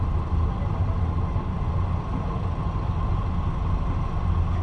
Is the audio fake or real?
real